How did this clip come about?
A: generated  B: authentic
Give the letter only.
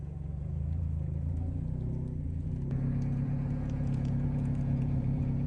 A